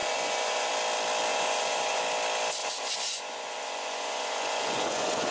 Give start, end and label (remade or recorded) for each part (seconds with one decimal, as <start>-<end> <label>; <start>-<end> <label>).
0.0-0.7 remade; 0.7-1.3 recorded; 1.3-2.0 remade; 2.0-2.6 recorded; 2.6-5.3 remade